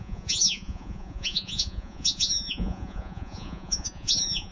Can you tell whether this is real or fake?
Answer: fake